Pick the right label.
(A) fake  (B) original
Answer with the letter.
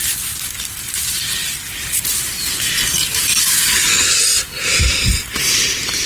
A